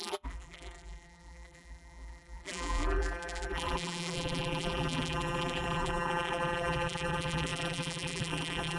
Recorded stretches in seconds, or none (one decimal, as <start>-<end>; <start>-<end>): none